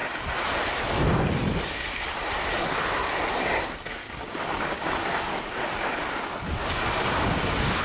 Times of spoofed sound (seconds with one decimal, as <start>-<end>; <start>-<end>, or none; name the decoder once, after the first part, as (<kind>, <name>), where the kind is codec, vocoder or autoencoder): 4.0-5.6 (codec, DAC); 6.6-7.8